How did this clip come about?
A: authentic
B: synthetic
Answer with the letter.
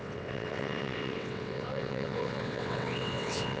B